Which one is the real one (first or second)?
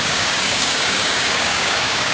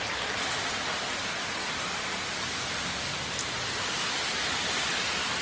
second